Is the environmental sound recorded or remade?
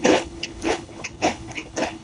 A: remade